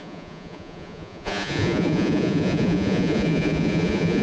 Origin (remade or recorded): remade